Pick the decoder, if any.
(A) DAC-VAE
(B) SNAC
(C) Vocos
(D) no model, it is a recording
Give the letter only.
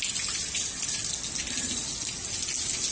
D